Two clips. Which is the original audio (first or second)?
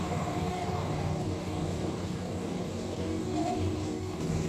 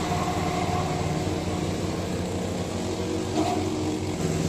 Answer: second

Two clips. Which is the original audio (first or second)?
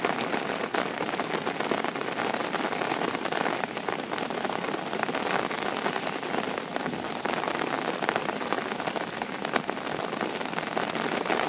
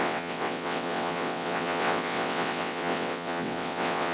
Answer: first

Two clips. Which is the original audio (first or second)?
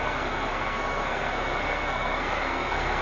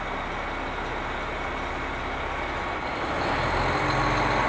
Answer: second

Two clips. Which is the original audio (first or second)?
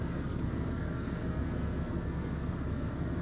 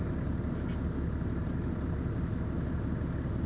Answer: second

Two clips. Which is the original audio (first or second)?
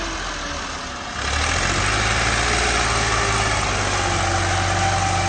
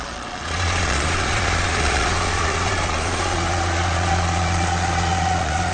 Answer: first